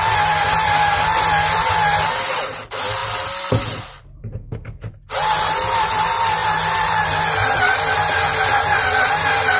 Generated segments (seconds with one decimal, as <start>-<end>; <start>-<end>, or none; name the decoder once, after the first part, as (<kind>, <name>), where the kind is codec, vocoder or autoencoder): 4.2-4.9 (codec, SNAC)